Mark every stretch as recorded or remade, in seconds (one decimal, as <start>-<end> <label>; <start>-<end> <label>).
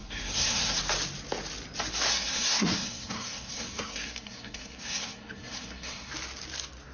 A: 0.0-0.8 remade; 0.8-2.1 recorded; 2.1-6.1 remade; 6.1-6.9 recorded